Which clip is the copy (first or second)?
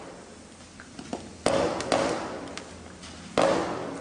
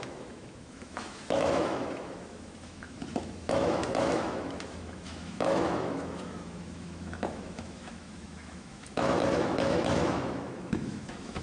second